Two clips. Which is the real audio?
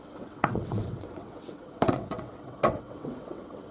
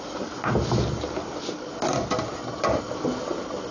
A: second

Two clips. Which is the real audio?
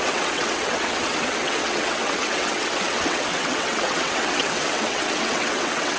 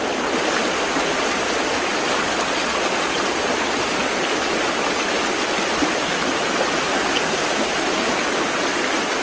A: second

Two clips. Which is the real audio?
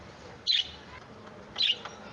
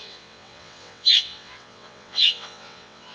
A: first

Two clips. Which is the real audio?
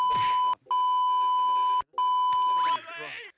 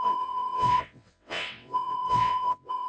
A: first